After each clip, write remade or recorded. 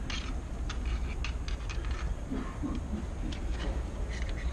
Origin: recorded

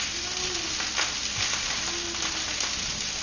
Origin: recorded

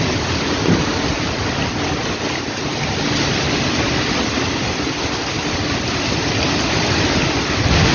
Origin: recorded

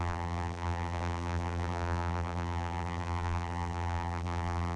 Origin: remade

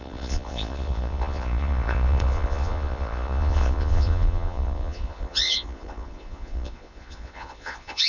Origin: remade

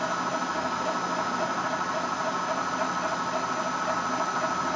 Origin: recorded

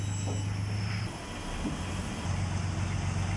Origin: recorded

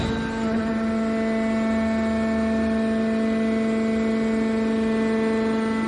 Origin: recorded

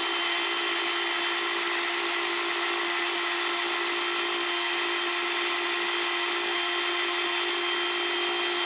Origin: recorded